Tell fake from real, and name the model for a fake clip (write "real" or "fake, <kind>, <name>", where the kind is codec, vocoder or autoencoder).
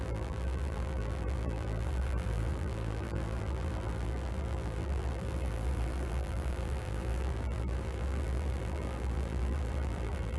fake, vocoder, BigVGAN v2